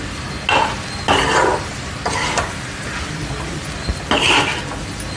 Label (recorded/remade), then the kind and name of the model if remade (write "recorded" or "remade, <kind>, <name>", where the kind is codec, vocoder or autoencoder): recorded